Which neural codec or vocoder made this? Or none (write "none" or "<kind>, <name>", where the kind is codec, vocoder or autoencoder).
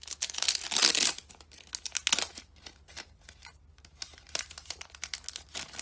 none